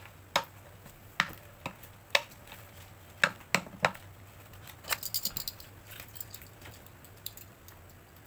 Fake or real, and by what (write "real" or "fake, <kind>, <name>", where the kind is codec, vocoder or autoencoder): real